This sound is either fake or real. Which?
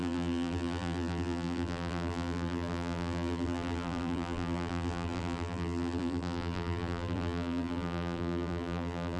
fake